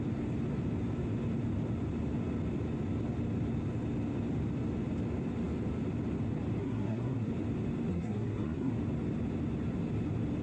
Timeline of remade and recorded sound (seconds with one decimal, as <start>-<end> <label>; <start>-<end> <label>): 0.0-6.6 recorded; 6.6-7.3 remade; 7.3-7.9 recorded; 7.9-8.7 remade; 8.7-10.4 recorded